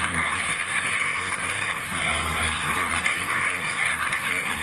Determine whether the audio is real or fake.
fake